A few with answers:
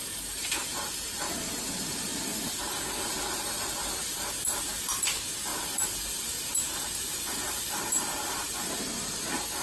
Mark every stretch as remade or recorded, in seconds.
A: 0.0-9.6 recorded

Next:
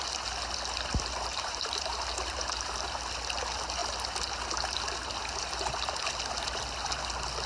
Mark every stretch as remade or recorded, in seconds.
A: 0.0-1.3 recorded; 1.3-1.9 remade; 1.9-7.5 recorded

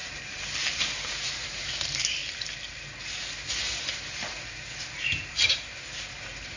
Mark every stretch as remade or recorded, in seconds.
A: 0.0-2.2 remade; 2.2-5.3 recorded; 5.3-6.6 remade

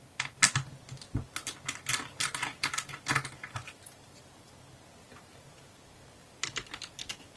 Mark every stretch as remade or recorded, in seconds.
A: 0.0-1.9 recorded; 1.9-4.3 remade; 4.3-5.0 recorded; 5.0-5.7 remade; 5.7-7.4 recorded

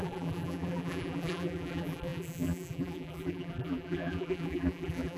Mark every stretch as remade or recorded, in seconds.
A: 0.0-5.2 remade

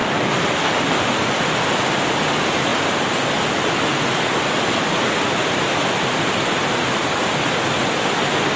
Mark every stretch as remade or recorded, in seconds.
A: 0.0-2.7 recorded; 2.7-3.3 remade; 3.3-8.6 recorded

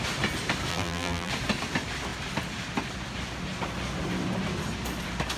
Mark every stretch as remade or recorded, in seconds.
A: 0.0-0.7 recorded; 0.7-1.3 remade; 1.3-5.4 recorded

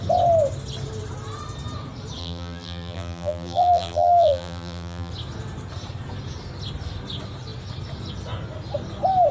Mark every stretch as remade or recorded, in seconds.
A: 0.0-2.2 recorded; 2.2-5.1 remade; 5.1-9.3 recorded